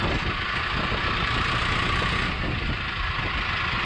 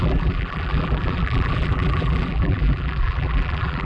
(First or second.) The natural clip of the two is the first